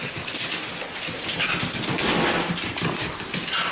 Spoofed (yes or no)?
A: no